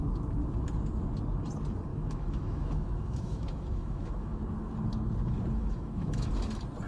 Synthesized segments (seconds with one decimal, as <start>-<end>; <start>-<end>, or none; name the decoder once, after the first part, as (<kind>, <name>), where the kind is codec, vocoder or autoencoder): 1.9-4.4 (autoencoder, DAC-VAE); 5.6-6.3